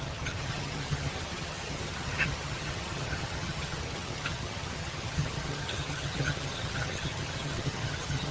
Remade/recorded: remade